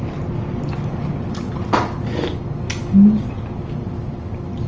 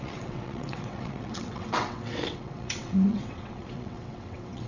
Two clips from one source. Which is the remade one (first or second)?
second